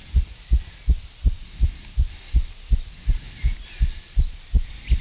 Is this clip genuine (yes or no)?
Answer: yes